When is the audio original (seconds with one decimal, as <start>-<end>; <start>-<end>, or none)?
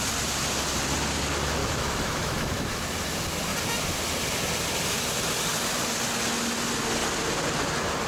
0.0-1.6; 2.7-8.1